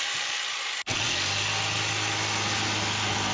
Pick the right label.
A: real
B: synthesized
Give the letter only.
A